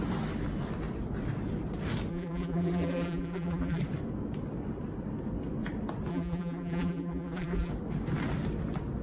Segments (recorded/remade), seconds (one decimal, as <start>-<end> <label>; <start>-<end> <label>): 0.0-2.1 recorded; 2.1-3.8 remade; 3.8-6.1 recorded; 6.1-7.7 remade; 7.7-9.0 recorded